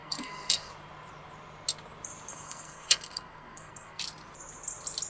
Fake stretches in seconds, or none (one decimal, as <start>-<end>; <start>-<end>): 0.0-0.7; 2.3-4.0